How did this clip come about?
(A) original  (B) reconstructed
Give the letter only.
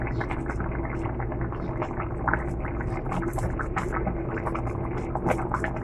A